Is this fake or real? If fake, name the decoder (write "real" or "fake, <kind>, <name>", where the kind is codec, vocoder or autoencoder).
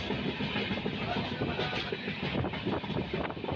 real